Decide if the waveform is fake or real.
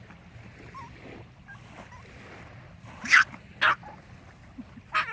real